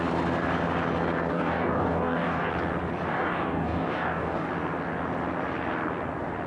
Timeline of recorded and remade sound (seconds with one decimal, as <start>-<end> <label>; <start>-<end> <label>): 0.0-1.3 recorded; 1.3-2.5 remade; 2.5-3.1 recorded; 3.1-4.5 remade; 4.5-6.5 recorded

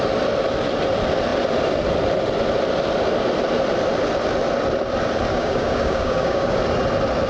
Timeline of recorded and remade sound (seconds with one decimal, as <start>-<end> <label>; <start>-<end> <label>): 0.0-5.3 recorded; 5.3-6.6 remade; 6.6-7.3 recorded